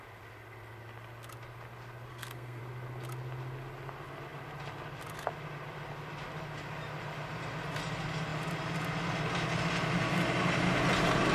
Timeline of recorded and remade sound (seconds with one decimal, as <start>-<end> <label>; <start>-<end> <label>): 0.0-2.1 recorded; 2.1-2.6 remade; 2.6-11.3 recorded